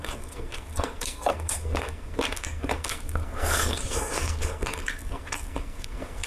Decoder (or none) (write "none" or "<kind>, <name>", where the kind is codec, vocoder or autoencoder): codec, SNAC